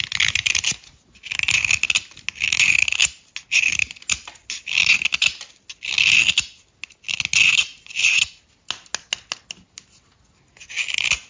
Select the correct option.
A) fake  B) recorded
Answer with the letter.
B